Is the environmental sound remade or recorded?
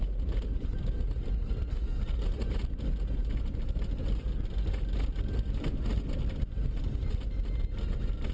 recorded